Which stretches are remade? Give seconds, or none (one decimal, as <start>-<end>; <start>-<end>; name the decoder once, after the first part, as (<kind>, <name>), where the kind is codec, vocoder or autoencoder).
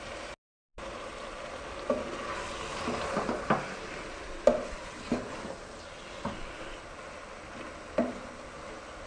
none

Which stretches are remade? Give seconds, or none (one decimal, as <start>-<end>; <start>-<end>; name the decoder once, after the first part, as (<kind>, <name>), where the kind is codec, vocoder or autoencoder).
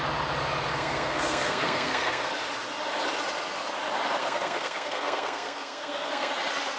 0.7-2.3 (codec, SNAC); 4.2-6.3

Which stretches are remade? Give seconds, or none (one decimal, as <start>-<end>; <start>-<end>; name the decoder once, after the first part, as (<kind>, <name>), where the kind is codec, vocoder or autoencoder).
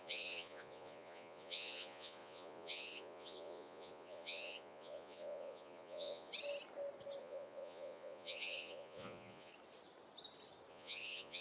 0.0-6.3 (vocoder, Vocos); 7.2-9.5; 10.7-11.4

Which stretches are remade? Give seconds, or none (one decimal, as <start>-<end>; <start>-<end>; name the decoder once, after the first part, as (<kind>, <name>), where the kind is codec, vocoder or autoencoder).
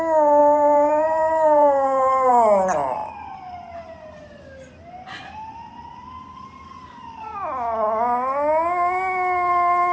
0.4-2.3 (vocoder, BigVGAN v2)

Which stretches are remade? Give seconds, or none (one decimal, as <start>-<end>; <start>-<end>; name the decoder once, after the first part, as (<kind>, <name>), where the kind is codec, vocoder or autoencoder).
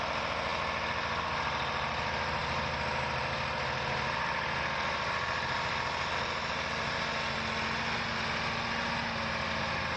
none